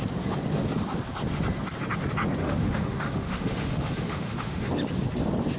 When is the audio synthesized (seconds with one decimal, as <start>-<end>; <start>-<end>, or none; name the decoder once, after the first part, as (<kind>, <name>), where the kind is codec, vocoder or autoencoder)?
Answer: 2.4-4.7 (autoencoder, DAC-VAE)